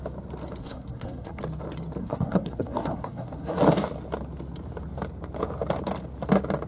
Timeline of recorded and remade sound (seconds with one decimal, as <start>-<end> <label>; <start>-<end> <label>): 0.0-0.6 recorded; 0.6-1.4 remade; 1.4-2.0 recorded; 2.0-3.6 remade; 3.6-6.7 recorded